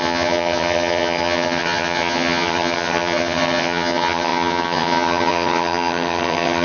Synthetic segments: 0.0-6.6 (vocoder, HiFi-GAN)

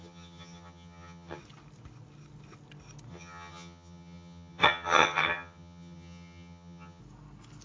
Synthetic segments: 0.0-1.4 (vocoder, HiFi-GAN); 3.1-7.0

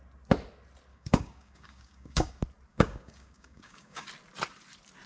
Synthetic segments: 0.9-2.3 (codec, DAC); 2.7-4.1

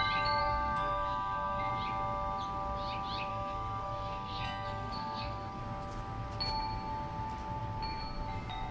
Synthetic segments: 0.4-1.7 (codec, SNAC); 3.3-5.6

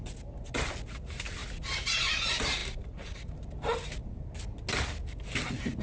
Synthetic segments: none

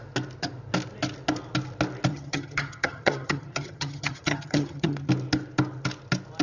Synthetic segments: 2.1-5.1 (vocoder, HiFi-GAN)

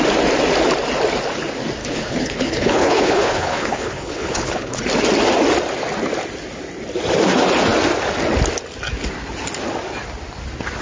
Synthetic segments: 1.8-4.8 (codec, HILCodec)